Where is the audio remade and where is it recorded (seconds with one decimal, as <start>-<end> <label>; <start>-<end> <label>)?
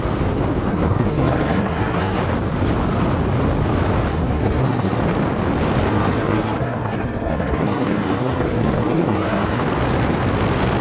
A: 0.0-0.7 recorded; 0.7-2.2 remade; 2.2-4.1 recorded; 4.1-5.0 remade; 5.0-5.9 recorded; 5.9-9.6 remade; 9.6-10.8 recorded